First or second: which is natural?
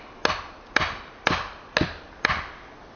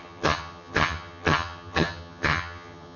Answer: first